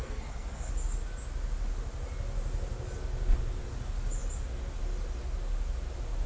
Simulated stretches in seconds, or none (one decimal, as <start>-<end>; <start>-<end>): 0.0-0.7